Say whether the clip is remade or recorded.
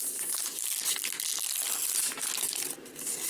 recorded